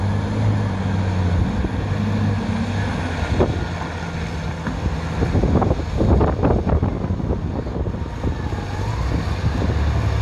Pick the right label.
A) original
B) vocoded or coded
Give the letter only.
A